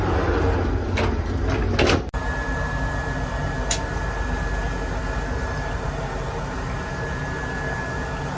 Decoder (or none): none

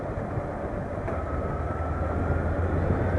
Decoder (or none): none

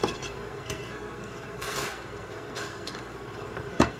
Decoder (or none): codec, SNAC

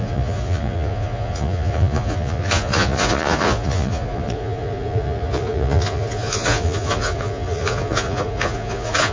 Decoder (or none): vocoder, Vocos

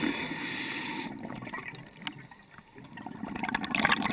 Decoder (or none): none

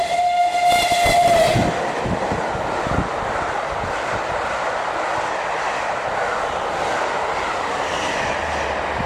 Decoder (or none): none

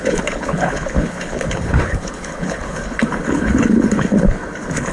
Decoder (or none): codec, HILCodec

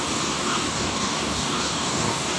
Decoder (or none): codec, DAC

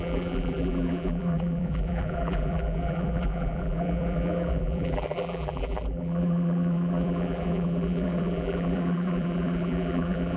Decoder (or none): vocoder, BigVGAN v2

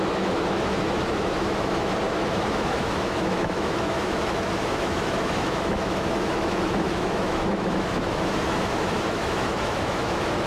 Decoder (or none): autoencoder, DAC-VAE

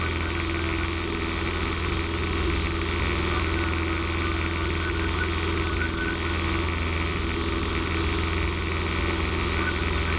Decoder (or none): none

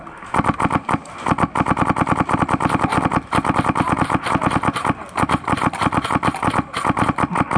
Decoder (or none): none